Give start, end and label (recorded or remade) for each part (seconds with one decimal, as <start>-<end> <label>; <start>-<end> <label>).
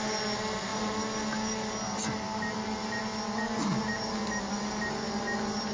0.0-5.7 recorded